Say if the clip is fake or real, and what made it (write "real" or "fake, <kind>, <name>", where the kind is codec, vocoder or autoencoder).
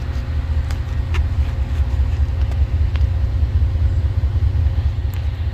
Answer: real